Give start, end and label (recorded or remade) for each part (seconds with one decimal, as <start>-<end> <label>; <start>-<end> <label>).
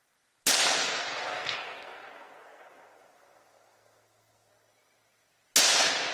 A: 0.0-0.8 recorded; 0.8-4.5 remade; 4.5-6.1 recorded